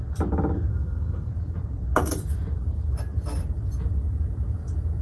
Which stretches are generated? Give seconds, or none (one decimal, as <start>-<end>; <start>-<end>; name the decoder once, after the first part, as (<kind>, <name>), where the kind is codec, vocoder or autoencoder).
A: 0.7-1.3 (codec, SNAC)